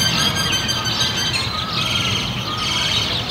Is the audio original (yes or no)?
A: yes